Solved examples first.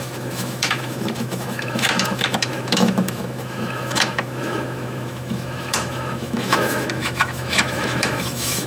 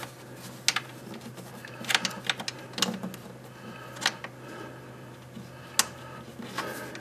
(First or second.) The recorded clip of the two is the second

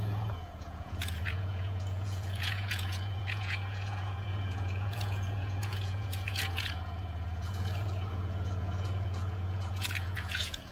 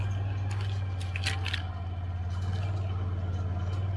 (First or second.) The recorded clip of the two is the second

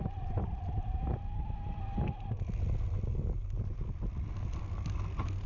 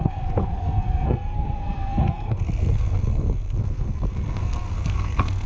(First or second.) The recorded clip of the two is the first